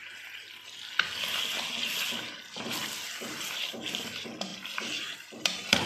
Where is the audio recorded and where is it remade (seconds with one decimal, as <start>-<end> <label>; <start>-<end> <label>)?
0.0-0.9 remade; 0.9-2.8 recorded; 2.8-3.6 remade; 3.6-4.5 recorded; 4.5-5.9 remade